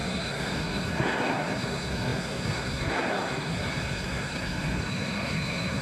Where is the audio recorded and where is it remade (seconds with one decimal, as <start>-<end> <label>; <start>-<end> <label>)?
0.0-5.8 remade

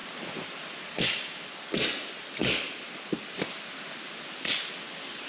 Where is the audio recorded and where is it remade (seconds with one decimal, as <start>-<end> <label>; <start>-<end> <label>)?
0.0-5.3 recorded

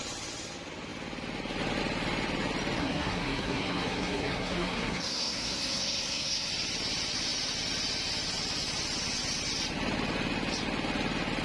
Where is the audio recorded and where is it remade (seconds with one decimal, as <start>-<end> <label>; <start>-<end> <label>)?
0.0-2.8 recorded; 2.8-6.5 remade; 6.5-11.4 recorded